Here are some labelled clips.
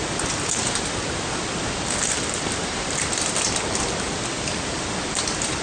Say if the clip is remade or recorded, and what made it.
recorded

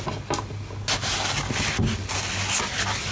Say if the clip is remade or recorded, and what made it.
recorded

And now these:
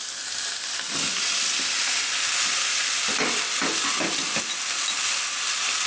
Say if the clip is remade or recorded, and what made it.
recorded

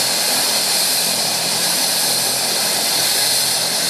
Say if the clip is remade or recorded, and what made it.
recorded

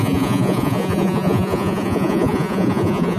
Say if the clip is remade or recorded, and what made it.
remade, vocoder, Vocos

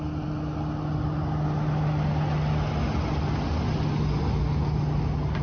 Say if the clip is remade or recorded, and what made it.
recorded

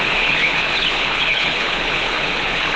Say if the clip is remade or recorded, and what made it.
remade, codec, HILCodec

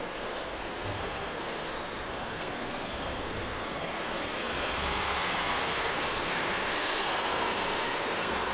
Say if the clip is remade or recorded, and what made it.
remade, codec, SNAC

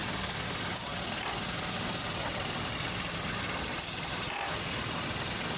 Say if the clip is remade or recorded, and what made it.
recorded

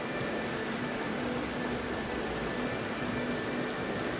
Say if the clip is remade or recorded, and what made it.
recorded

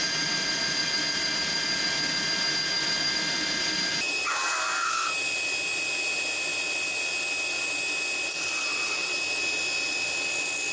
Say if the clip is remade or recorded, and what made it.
recorded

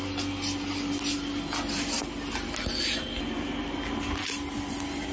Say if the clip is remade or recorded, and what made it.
recorded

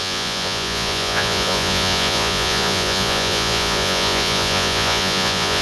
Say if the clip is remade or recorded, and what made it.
remade, vocoder, Vocos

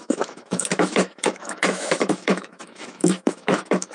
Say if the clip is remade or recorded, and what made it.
remade, autoencoder, DAC-VAE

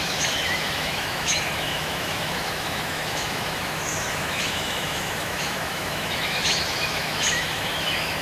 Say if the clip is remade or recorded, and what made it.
remade, autoencoder, DAC-VAE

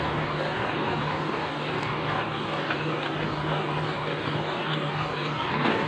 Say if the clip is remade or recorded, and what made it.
remade, codec, DAC